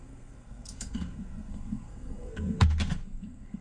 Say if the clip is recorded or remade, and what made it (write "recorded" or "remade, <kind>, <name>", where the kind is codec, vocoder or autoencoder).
remade, codec, SNAC